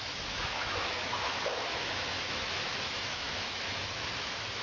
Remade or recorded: remade